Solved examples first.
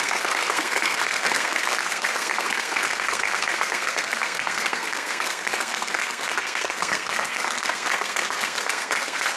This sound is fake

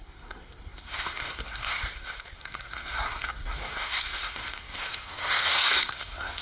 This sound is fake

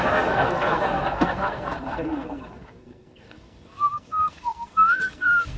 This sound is fake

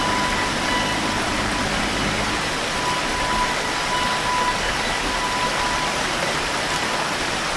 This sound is real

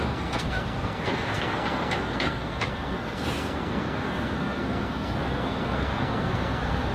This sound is fake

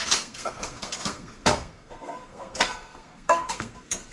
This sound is fake